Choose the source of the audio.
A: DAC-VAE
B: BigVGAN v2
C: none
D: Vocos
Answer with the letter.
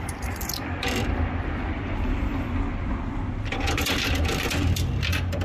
B